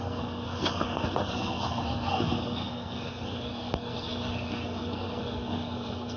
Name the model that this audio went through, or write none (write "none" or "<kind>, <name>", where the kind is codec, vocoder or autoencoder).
codec, SNAC